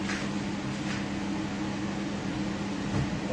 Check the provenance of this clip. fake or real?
real